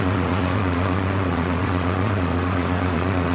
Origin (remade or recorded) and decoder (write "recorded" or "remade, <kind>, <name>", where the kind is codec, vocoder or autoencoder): remade, vocoder, Vocos